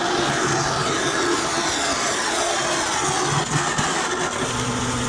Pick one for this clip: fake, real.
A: real